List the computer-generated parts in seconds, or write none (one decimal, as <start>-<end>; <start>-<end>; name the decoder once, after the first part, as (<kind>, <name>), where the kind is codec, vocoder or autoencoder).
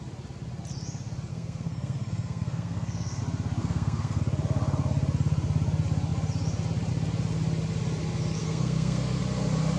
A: 1.3-3.2 (codec, SNAC); 3.6-4.2; 8.4-9.2